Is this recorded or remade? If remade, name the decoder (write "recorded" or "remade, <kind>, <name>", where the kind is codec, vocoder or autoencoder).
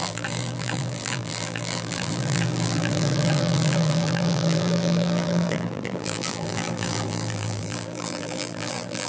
remade, vocoder, BigVGAN v2